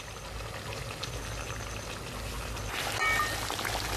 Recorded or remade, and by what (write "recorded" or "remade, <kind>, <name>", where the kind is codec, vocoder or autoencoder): recorded